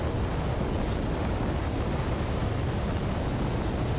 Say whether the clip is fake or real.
real